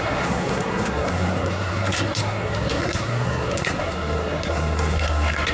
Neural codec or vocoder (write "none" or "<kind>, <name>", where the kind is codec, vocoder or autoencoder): codec, SNAC